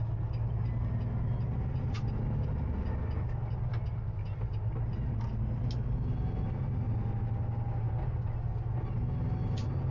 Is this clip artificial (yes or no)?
no